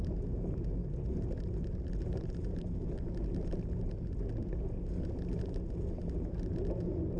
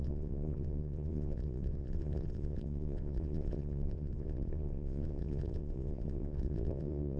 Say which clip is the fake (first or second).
second